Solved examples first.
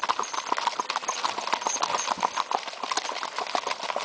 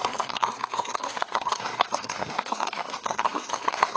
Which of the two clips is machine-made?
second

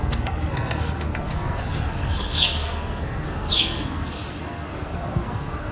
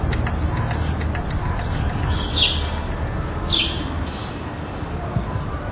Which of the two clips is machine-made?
first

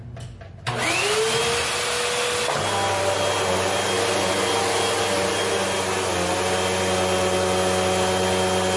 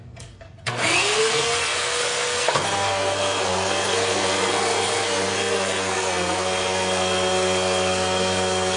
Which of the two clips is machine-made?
second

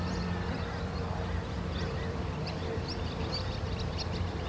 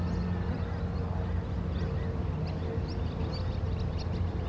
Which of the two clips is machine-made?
first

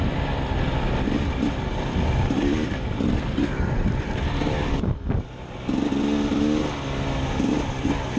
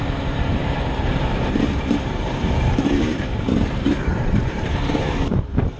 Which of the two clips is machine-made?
second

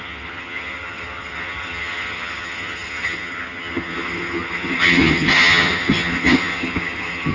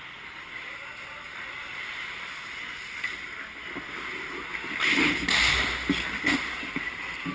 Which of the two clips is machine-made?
first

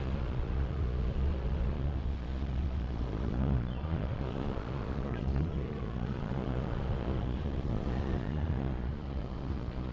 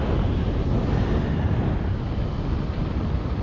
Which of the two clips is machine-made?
first